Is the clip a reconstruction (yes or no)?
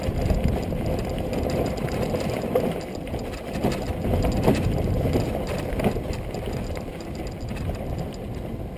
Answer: no